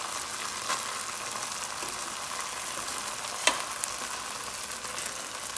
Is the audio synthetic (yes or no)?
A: no